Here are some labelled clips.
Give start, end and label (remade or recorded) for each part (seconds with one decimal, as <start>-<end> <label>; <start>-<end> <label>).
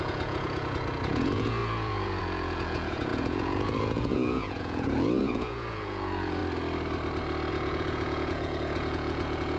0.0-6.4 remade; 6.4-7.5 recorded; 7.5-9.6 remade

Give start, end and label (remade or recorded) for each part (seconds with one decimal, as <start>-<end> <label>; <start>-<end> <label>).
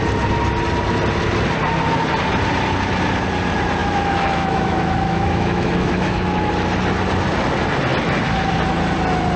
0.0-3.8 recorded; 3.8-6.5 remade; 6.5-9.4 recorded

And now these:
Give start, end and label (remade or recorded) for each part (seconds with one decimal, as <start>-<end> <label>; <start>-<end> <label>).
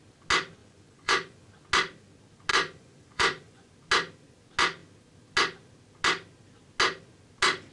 0.0-0.6 recorded; 0.6-1.5 remade; 1.5-2.5 recorded; 2.5-3.7 remade; 3.7-7.7 recorded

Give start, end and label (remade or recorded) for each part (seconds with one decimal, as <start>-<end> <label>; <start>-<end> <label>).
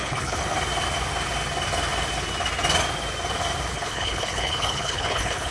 0.0-0.4 remade; 0.4-3.7 recorded; 3.7-5.5 remade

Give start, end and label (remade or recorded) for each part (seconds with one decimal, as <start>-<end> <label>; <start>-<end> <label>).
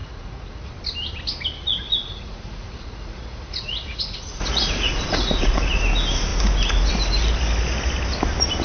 0.0-0.7 remade; 0.7-1.7 recorded; 1.7-5.8 remade; 5.8-8.6 recorded